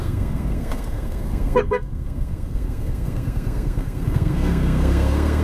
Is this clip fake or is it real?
fake